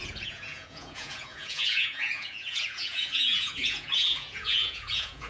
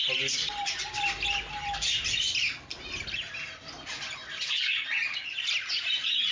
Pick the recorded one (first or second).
second